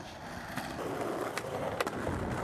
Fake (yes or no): no